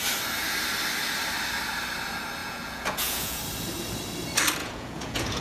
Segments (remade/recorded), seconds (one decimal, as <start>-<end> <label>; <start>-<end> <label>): 0.0-2.4 recorded; 2.4-3.4 remade; 3.4-4.6 recorded; 4.6-5.4 remade